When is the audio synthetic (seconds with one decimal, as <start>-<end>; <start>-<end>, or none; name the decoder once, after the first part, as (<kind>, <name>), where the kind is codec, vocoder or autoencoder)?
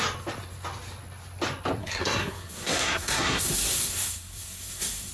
1.8-5.1 (codec, SNAC)